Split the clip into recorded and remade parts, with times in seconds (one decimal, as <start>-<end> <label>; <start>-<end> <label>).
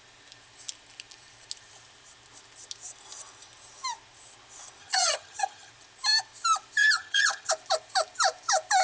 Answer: 0.0-4.8 recorded; 4.8-5.7 remade; 5.7-6.8 recorded; 6.8-7.5 remade; 7.5-8.8 recorded